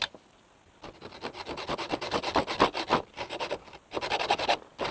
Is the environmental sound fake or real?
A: real